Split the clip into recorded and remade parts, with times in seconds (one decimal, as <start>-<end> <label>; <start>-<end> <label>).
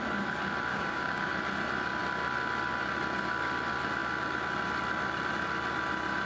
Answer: 0.0-0.7 recorded; 0.7-1.3 remade; 1.3-6.3 recorded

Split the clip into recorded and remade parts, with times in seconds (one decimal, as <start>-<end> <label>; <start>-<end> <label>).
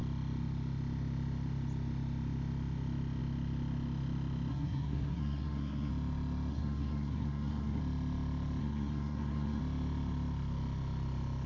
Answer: 0.0-4.5 recorded; 4.5-5.9 remade; 5.9-6.5 recorded; 6.5-7.8 remade; 7.8-8.6 recorded; 8.6-9.6 remade; 9.6-11.5 recorded